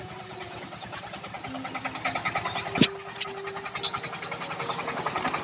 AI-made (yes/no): no